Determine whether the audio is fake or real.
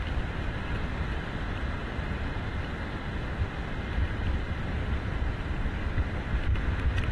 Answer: fake